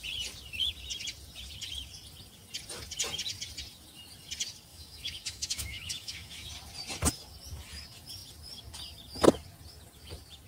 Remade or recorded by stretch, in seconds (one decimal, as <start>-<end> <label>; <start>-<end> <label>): 0.0-4.7 recorded; 4.7-6.5 remade; 6.5-10.5 recorded